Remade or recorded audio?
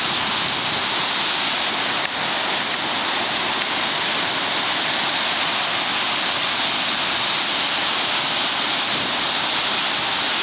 recorded